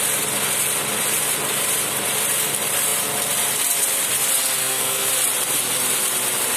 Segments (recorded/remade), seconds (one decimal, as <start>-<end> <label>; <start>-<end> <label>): 0.0-4.6 recorded; 4.6-5.1 remade; 5.1-6.6 recorded